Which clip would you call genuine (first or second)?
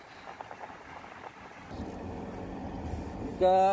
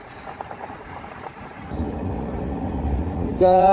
first